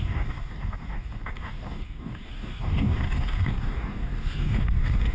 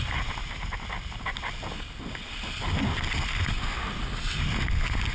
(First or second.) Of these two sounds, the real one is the second